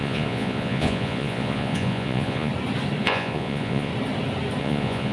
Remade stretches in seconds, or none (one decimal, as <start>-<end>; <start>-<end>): 0.0-2.5; 3.0-3.9; 4.6-5.1